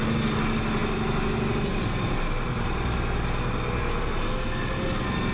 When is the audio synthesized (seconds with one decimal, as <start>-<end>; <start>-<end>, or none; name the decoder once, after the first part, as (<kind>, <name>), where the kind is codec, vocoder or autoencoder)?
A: none